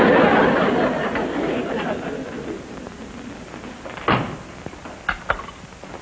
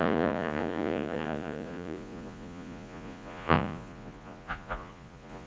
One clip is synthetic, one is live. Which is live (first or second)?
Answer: first